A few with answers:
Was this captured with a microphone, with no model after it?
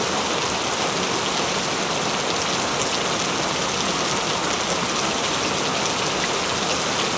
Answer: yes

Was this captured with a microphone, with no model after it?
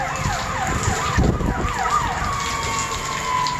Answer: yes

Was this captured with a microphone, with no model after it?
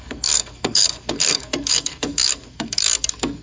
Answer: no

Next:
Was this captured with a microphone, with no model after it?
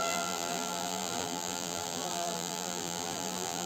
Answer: no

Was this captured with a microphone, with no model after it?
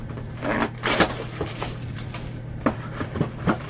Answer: no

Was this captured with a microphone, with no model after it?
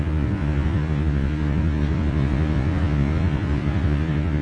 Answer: no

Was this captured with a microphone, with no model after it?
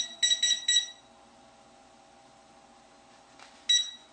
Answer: yes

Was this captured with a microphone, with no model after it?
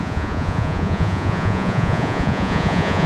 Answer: no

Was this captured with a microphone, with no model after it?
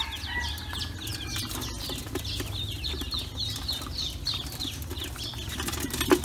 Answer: yes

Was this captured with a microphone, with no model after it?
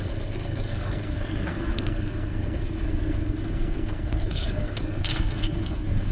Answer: no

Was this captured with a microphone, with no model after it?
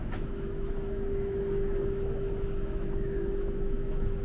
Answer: no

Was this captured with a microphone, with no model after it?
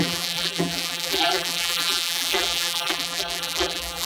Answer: no